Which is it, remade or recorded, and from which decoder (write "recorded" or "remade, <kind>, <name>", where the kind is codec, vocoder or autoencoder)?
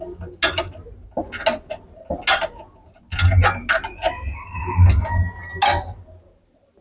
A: recorded